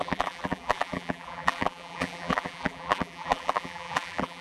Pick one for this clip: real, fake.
fake